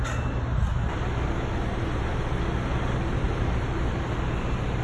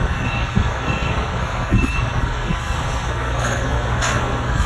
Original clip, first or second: first